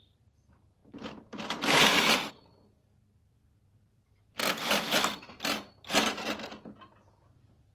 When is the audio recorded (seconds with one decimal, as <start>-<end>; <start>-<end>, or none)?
0.0-7.7

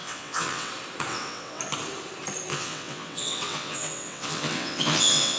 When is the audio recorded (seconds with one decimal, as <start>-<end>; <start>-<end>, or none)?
0.7-1.1; 1.6-2.5

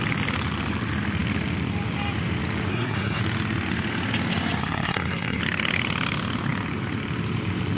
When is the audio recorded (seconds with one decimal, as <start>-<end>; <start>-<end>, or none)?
0.0-2.7; 3.2-4.6; 5.4-7.8

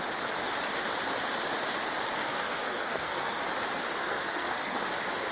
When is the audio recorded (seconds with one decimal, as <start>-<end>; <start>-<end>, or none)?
0.0-2.2; 3.4-4.0; 4.8-5.3

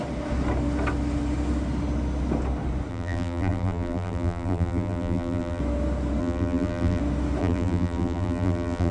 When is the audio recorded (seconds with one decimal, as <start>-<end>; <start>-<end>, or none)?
0.0-2.9; 5.6-6.2; 7.0-7.4

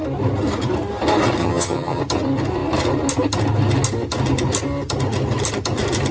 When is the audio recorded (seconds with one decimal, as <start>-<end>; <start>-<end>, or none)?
0.0-1.4; 2.0-6.1

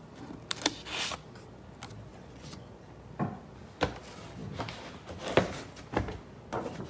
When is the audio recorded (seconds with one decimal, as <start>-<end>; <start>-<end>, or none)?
0.0-2.1; 2.8-6.9

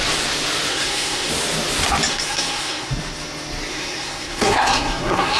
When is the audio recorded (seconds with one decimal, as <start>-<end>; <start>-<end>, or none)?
0.0-0.7; 1.3-2.1; 2.9-3.7